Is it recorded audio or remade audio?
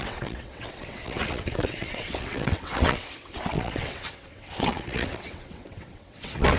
remade